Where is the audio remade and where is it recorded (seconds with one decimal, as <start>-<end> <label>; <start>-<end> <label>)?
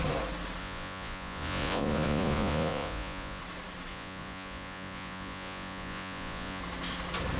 0.0-0.6 recorded; 0.6-3.4 remade; 3.4-3.9 recorded; 3.9-6.6 remade; 6.6-7.4 recorded